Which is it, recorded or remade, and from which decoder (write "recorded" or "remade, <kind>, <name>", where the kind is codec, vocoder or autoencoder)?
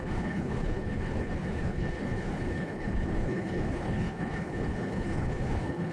remade, codec, HILCodec